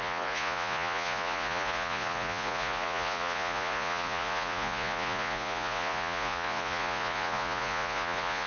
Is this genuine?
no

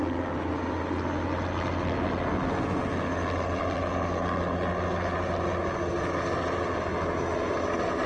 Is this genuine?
yes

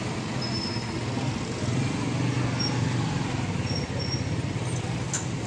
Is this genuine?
yes